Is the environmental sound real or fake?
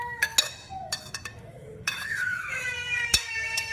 fake